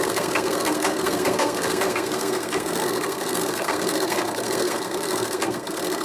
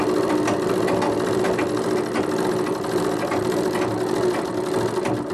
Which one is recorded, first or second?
second